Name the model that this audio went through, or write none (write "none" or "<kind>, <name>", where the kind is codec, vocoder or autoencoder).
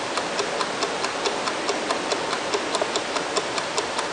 none